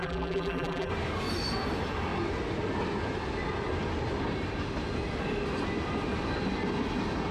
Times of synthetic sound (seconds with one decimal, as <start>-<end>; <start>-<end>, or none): 0.0-0.9